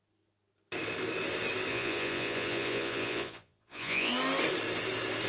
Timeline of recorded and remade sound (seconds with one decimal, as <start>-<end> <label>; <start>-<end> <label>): 0.0-1.7 recorded; 1.7-4.1 remade; 4.1-5.3 recorded